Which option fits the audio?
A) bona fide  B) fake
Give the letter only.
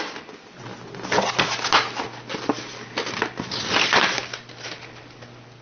A